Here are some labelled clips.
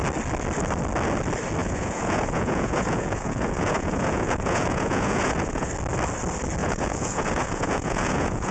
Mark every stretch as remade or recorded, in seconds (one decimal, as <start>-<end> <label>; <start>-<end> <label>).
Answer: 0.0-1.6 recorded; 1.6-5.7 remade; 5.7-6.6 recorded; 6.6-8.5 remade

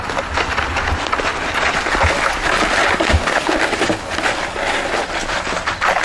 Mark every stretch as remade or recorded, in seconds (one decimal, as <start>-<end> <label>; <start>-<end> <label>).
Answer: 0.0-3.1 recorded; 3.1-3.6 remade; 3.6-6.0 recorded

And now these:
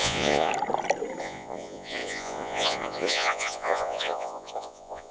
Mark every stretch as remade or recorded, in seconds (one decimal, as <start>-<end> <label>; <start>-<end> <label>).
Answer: 0.0-0.5 remade; 0.5-1.2 recorded; 1.2-5.1 remade

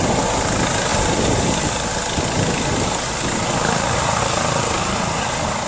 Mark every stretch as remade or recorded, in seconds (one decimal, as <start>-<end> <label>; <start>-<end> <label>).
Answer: 0.0-5.7 recorded

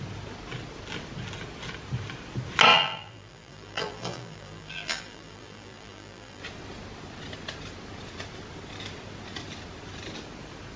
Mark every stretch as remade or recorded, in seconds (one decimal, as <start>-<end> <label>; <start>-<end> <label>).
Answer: 0.0-2.7 recorded; 2.7-6.4 remade; 6.4-10.8 recorded

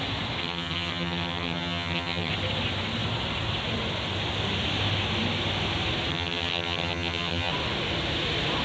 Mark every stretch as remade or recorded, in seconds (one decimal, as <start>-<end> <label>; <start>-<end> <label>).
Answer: 0.0-0.4 recorded; 0.4-2.3 remade; 2.3-6.1 recorded; 6.1-7.5 remade; 7.5-8.6 recorded

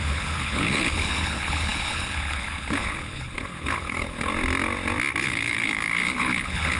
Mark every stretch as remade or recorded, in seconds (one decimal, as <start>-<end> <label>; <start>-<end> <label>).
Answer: 0.0-4.3 remade; 4.3-5.2 recorded; 5.2-6.8 remade

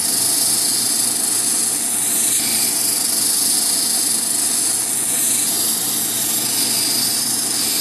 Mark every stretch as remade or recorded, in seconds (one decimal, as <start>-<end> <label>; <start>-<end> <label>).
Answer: 0.0-7.8 recorded